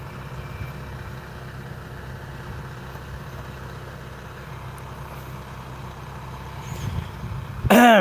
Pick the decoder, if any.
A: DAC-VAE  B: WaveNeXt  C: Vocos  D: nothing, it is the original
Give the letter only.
D